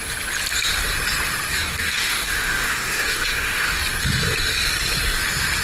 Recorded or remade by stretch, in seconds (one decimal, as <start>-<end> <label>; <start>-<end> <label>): 0.0-1.5 recorded; 1.5-3.8 remade; 3.8-5.6 recorded